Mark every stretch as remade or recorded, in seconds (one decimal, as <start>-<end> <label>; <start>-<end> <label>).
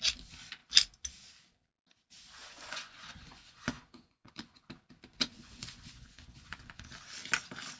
0.0-2.4 recorded; 2.4-4.6 remade; 4.6-5.1 recorded; 5.1-6.9 remade; 6.9-7.8 recorded